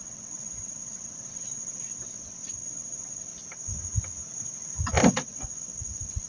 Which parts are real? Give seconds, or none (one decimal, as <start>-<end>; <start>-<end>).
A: 3.3-5.1